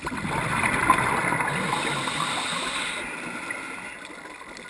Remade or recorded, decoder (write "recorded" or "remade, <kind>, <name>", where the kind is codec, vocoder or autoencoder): recorded